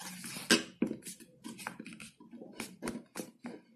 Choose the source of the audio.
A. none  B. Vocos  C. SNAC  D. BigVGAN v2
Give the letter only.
A